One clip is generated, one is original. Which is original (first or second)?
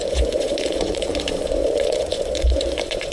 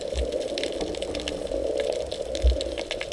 second